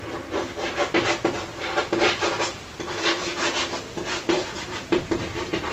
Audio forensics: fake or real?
fake